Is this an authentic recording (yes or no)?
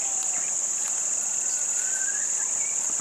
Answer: yes